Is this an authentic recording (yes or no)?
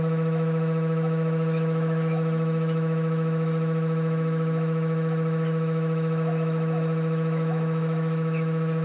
no